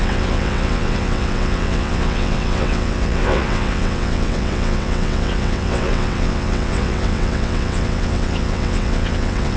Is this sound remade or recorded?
remade